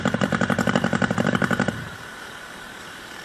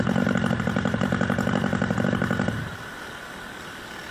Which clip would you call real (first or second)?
second